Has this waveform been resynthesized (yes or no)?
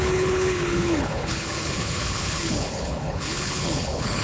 yes